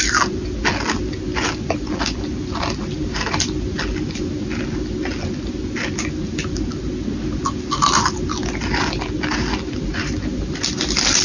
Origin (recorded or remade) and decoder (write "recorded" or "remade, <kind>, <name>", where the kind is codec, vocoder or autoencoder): recorded